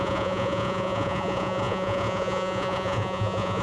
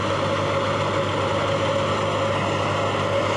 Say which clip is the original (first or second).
second